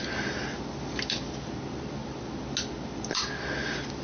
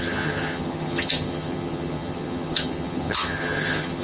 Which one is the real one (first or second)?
first